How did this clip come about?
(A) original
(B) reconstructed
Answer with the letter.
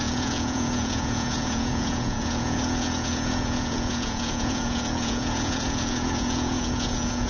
B